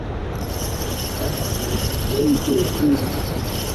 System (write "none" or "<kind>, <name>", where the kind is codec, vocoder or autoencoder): vocoder, BigVGAN v2